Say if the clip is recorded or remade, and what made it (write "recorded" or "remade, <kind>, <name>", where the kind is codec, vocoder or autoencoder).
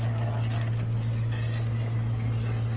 recorded